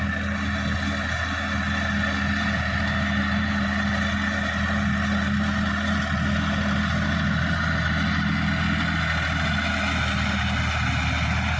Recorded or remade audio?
recorded